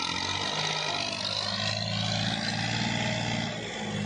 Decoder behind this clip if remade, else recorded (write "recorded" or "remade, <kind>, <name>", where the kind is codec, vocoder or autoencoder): recorded